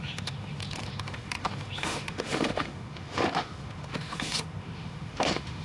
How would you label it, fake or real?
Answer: fake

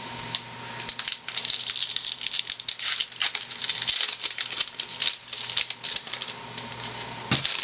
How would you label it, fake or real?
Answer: real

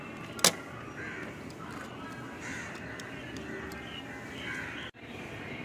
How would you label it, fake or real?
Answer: real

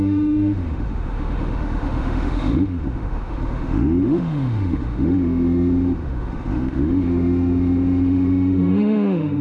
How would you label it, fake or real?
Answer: fake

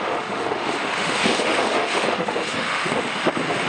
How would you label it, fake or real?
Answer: fake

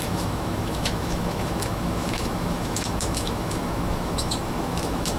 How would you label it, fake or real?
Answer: fake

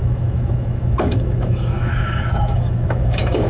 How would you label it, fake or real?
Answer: fake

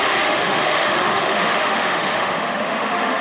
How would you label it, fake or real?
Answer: fake